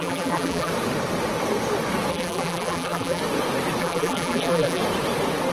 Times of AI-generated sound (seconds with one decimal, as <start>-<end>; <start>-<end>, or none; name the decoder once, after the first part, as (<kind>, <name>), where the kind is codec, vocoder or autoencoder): 0.0-0.7 (vocoder, BigVGAN v2); 2.1-3.2; 3.8-4.8